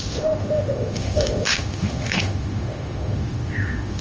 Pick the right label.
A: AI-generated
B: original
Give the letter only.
A